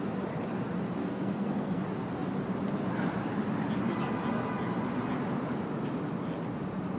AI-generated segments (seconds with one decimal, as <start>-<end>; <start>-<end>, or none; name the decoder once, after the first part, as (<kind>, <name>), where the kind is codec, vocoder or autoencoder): 1.0-1.8 (codec, SNAC)